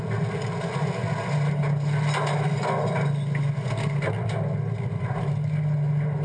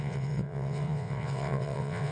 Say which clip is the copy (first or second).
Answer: second